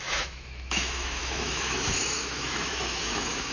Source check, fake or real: fake